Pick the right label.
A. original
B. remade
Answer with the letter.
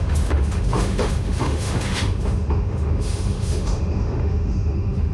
B